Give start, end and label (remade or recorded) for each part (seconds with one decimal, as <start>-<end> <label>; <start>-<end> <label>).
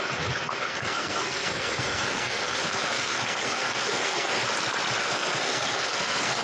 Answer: 0.0-4.4 remade; 4.4-5.0 recorded; 5.0-6.4 remade